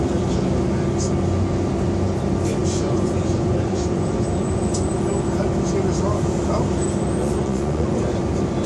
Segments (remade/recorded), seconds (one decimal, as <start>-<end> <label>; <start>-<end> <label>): 0.0-2.6 recorded; 2.6-4.9 remade; 4.9-7.2 recorded; 7.2-8.0 remade; 8.0-8.7 recorded